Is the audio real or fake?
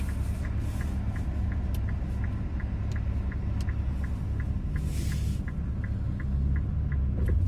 real